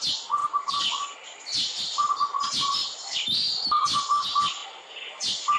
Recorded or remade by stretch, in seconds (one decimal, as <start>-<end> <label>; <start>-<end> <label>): 0.0-0.4 recorded; 0.4-1.0 remade; 1.0-2.8 recorded; 2.8-3.5 remade; 3.5-5.6 recorded